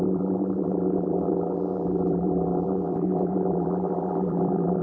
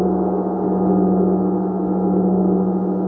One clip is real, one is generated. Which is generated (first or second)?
first